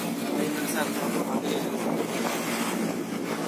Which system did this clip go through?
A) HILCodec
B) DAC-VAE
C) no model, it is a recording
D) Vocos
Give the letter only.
C